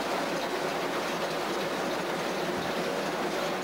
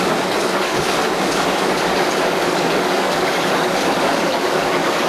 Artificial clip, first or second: second